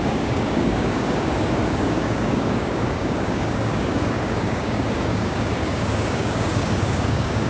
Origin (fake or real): fake